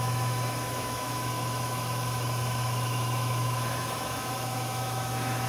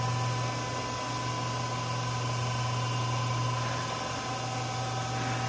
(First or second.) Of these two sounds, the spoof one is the first